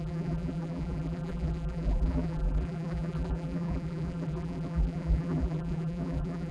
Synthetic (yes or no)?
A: yes